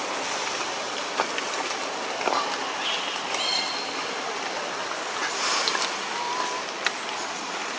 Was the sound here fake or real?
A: real